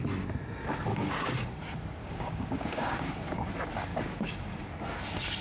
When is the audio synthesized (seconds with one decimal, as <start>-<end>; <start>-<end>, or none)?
0.9-1.5; 2.0-3.5; 3.9-4.6